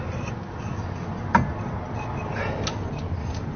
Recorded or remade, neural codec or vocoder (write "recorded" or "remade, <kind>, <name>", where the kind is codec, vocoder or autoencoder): recorded